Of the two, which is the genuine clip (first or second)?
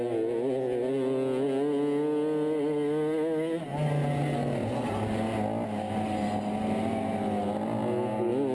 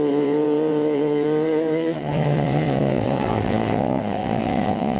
first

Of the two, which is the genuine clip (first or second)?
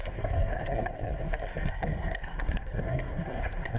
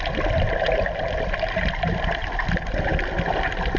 second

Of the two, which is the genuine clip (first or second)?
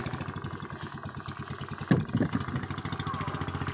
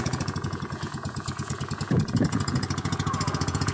first